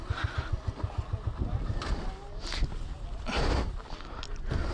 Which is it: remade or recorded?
recorded